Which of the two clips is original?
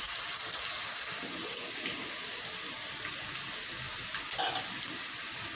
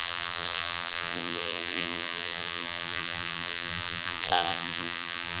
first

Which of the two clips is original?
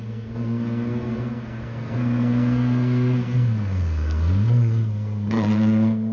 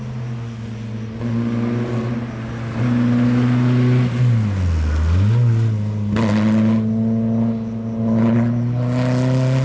second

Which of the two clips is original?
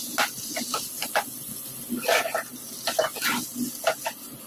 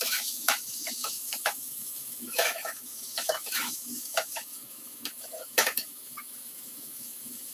first